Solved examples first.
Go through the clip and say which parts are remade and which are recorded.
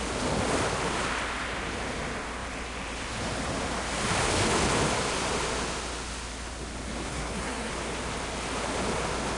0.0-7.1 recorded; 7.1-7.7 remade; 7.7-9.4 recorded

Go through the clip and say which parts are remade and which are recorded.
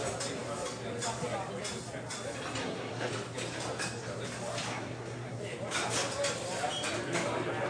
0.0-2.6 recorded; 2.6-3.1 remade; 3.1-4.7 recorded; 4.7-5.4 remade; 5.4-7.7 recorded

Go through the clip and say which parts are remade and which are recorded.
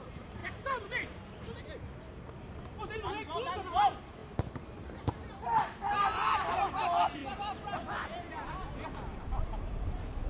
0.0-10.3 remade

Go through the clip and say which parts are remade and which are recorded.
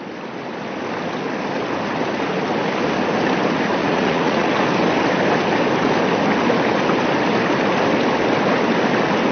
0.0-3.8 recorded; 3.8-4.5 remade; 4.5-9.3 recorded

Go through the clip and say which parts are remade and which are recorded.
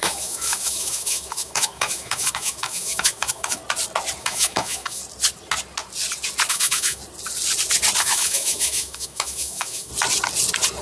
0.0-3.6 remade; 3.6-4.2 recorded; 4.2-5.0 remade; 5.0-6.5 recorded; 6.5-7.0 remade; 7.0-8.0 recorded; 8.0-9.9 remade; 9.9-10.8 recorded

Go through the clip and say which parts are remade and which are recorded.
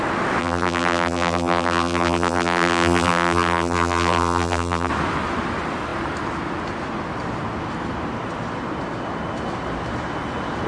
0.0-0.4 recorded; 0.4-4.9 remade; 4.9-10.7 recorded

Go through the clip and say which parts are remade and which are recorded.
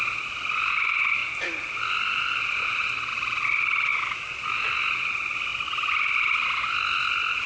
0.0-7.5 recorded